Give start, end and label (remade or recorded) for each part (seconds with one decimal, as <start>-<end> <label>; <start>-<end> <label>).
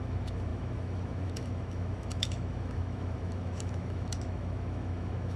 0.0-5.4 remade